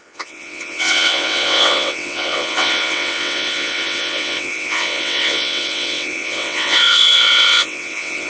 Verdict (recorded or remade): remade